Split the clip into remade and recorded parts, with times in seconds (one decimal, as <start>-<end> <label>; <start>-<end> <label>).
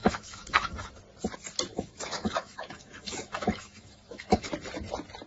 0.0-0.9 remade; 0.9-1.7 recorded; 1.7-4.5 remade; 4.5-5.3 recorded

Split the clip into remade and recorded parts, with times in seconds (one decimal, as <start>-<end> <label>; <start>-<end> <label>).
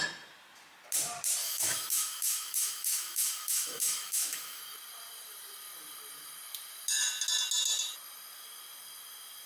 0.0-1.4 recorded; 1.4-4.6 remade; 4.6-9.5 recorded